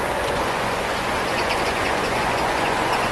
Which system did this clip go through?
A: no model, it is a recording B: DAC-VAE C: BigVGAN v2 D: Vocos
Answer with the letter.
D